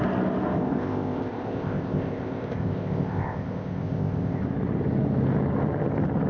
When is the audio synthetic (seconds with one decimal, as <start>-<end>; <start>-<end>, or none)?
0.6-4.4